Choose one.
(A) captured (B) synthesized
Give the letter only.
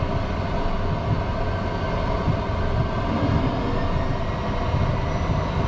A